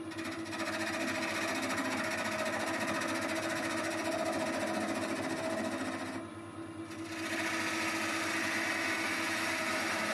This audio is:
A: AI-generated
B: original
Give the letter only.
B